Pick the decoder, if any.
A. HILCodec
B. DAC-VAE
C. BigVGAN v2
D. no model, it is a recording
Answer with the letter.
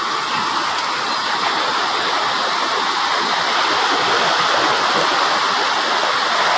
D